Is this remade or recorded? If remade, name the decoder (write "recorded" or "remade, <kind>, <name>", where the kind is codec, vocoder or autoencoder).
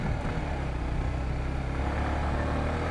recorded